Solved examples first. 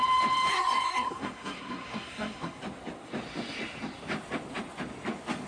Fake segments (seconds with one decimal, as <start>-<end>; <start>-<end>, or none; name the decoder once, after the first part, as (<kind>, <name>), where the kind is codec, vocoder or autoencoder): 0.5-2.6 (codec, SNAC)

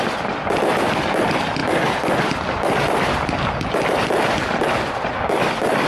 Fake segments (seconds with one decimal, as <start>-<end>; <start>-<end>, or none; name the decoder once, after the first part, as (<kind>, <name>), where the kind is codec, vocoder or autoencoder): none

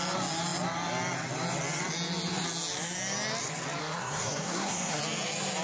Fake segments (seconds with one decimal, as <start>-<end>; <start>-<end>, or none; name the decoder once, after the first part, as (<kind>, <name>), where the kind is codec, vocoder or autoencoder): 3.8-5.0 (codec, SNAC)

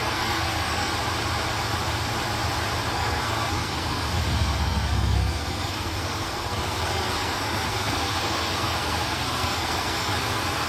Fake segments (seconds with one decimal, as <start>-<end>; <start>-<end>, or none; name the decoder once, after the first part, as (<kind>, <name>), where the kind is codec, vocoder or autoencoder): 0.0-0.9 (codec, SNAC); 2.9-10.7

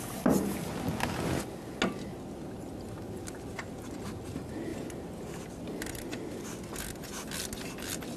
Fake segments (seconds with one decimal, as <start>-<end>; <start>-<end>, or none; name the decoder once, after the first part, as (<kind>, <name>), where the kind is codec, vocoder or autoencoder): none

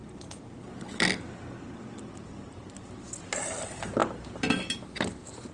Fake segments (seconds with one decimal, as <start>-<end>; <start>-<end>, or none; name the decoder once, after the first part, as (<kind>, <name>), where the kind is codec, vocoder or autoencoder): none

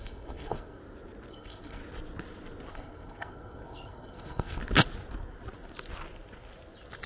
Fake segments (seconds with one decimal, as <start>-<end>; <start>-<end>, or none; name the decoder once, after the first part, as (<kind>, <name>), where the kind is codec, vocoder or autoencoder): 0.0-0.8 (codec, SNAC); 1.3-1.8; 2.7-4.6